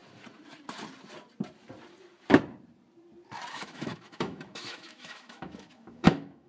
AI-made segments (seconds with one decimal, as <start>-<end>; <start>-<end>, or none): 3.5-6.5